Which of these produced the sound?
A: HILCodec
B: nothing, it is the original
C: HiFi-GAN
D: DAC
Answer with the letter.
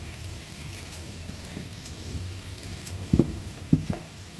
D